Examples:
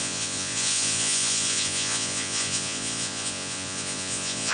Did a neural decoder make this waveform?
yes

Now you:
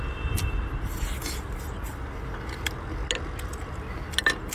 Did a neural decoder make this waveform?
no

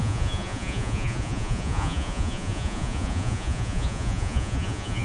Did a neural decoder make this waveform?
yes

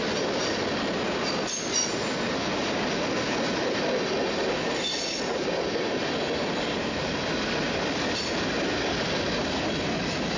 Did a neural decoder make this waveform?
no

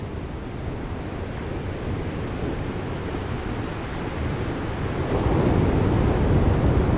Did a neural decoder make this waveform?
no